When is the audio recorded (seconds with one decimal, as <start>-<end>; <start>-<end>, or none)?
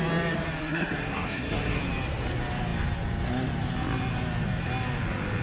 0.0-0.6; 1.8-5.4